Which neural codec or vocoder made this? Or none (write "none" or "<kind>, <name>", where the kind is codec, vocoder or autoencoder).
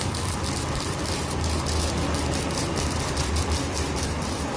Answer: none